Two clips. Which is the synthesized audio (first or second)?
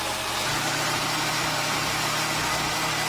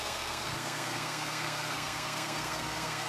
second